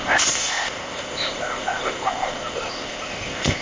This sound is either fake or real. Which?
fake